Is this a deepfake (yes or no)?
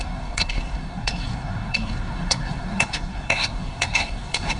yes